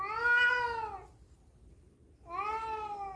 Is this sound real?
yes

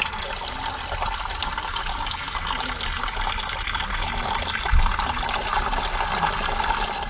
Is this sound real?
yes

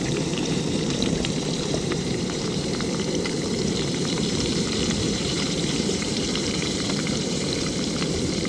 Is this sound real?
no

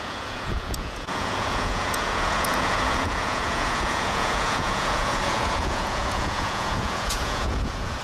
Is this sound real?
no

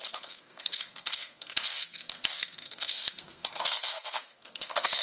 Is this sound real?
no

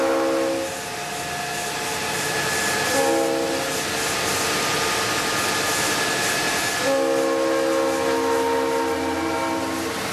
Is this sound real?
yes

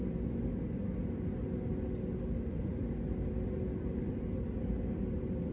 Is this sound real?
yes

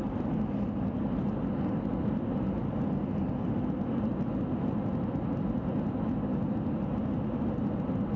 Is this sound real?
yes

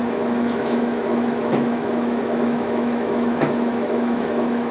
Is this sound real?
no